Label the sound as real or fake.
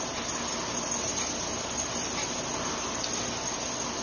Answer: real